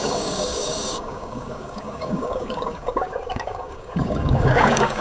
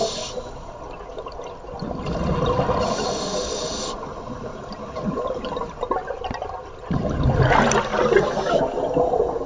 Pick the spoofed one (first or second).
first